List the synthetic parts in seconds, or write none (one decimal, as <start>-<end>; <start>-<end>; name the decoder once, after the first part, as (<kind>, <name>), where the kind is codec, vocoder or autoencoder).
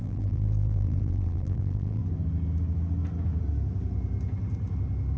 0.0-2.0 (vocoder, BigVGAN v2)